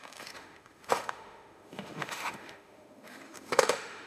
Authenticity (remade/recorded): remade